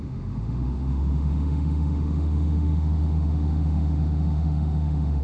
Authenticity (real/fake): fake